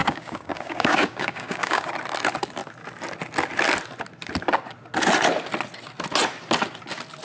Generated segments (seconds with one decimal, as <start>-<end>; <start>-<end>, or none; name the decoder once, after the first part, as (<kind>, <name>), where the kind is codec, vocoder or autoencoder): 0.0-1.9 (codec, DAC)